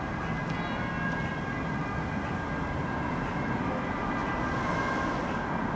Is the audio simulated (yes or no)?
no